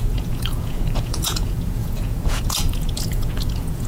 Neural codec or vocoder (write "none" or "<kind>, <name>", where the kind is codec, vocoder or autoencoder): vocoder, Vocos